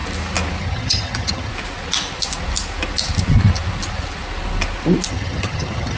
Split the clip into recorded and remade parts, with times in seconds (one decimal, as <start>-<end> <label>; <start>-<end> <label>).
0.0-0.6 recorded; 0.6-1.5 remade; 1.5-5.1 recorded; 5.1-6.0 remade